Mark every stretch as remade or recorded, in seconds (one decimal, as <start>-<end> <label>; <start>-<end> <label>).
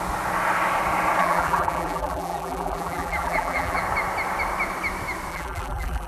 0.0-1.2 recorded; 1.2-3.8 remade; 3.8-5.3 recorded; 5.3-6.1 remade